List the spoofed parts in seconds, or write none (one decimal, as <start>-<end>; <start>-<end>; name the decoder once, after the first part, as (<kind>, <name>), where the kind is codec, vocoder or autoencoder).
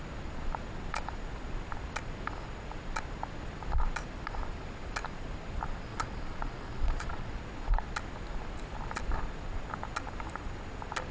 5.9-7.4 (vocoder, Vocos)